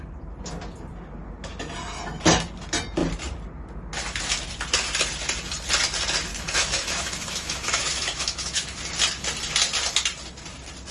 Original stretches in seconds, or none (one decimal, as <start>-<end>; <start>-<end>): 0.0-6.3; 8.8-10.9